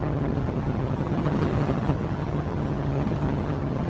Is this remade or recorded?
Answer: remade